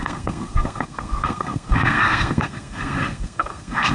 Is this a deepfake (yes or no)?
yes